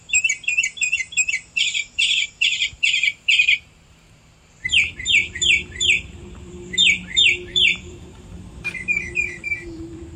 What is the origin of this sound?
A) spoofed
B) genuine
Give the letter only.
A